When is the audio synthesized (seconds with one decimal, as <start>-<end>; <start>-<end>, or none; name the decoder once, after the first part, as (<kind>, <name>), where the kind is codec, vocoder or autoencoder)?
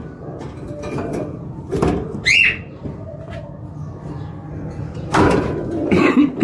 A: none